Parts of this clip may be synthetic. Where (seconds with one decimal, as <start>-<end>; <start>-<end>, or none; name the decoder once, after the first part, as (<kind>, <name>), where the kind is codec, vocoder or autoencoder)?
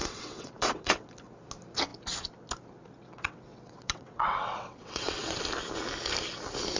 0.0-1.1 (vocoder, WaveNeXt); 3.0-5.4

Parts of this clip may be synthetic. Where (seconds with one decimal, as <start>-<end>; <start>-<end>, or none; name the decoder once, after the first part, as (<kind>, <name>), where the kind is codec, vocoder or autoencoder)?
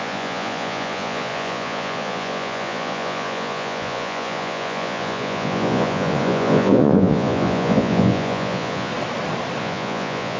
0.0-8.9 (vocoder, Vocos); 9.6-10.4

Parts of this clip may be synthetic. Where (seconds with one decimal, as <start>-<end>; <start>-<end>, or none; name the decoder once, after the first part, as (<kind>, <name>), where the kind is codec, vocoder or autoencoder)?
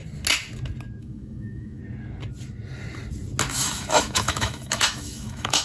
1.0-1.8 (autoencoder, DAC-VAE); 3.5-5.6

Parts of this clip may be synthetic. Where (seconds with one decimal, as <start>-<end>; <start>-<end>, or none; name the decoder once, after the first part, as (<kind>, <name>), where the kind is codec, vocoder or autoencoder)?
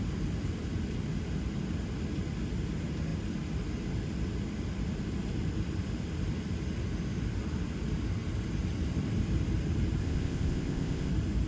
10.0-11.1 (codec, ZipCodec)